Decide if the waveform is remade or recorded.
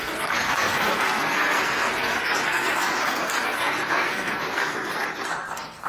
remade